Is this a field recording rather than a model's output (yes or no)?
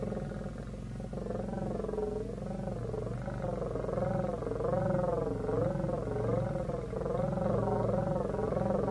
yes